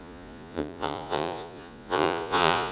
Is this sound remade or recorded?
remade